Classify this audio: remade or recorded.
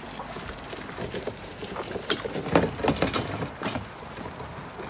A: recorded